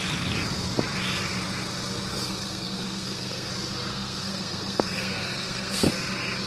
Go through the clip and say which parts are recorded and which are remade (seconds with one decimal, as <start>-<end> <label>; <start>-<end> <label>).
0.0-2.1 recorded; 2.1-3.5 remade; 3.5-3.9 recorded; 3.9-5.9 remade; 5.9-6.5 recorded